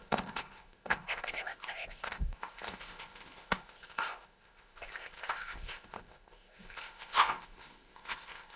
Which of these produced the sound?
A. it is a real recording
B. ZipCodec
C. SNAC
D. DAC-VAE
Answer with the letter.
B